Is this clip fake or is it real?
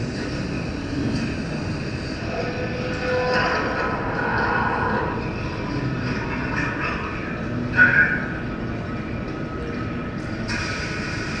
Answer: real